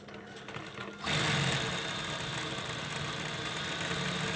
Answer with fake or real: real